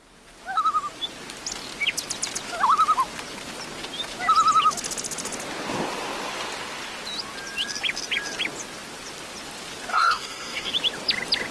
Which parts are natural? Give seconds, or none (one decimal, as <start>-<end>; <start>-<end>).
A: 0.0-9.9; 10.7-11.5